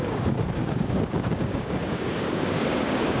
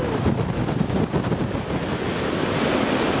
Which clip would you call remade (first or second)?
first